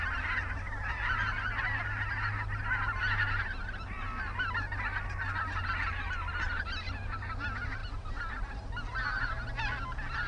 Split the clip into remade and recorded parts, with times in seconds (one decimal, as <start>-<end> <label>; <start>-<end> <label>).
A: 0.0-10.3 recorded